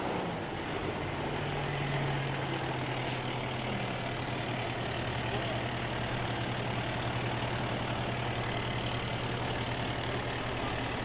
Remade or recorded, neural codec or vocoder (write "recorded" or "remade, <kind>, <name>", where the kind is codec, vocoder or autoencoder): recorded